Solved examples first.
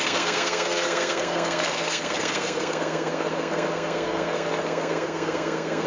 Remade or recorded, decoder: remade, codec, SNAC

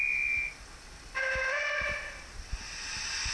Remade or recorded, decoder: recorded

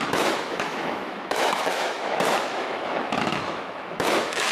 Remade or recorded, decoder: remade, autoencoder, DAC-VAE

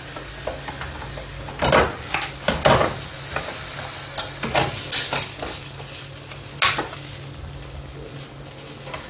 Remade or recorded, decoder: recorded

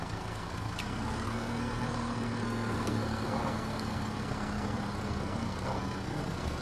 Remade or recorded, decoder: remade, codec, SNAC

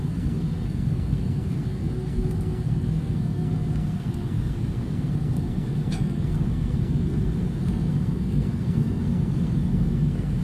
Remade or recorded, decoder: remade, codec, SNAC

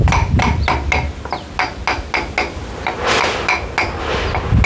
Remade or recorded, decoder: recorded